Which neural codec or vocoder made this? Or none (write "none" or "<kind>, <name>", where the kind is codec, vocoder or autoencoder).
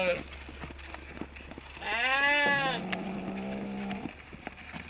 none